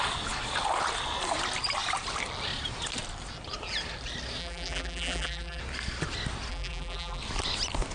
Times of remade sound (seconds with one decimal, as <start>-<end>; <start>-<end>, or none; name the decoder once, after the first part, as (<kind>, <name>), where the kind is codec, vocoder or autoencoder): 4.4-5.6 (vocoder, BigVGAN v2); 6.5-7.2